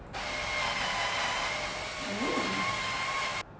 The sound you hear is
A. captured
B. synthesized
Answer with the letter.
A